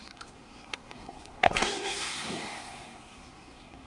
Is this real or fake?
fake